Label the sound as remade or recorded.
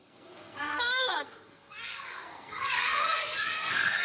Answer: remade